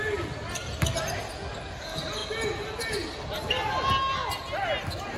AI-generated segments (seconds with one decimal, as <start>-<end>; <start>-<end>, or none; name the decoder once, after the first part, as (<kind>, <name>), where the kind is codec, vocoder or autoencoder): none